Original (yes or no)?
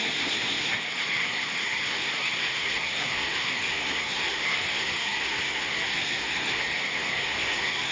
no